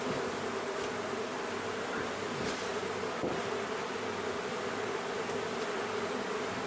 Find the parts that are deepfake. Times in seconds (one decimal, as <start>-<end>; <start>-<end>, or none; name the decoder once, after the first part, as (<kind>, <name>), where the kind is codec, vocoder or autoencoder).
2.7-6.7 (vocoder, BigVGAN v2)